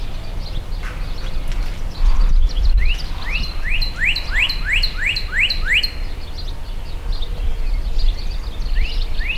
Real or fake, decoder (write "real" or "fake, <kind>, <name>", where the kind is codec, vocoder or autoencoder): real